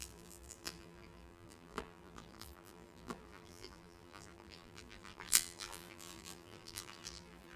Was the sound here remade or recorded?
remade